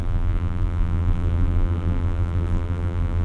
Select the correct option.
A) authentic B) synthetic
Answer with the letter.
B